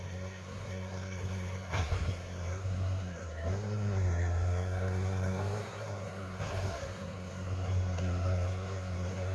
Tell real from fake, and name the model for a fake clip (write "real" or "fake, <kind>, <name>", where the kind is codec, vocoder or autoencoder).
fake, codec, SNAC